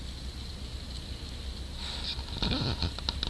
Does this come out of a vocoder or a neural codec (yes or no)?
no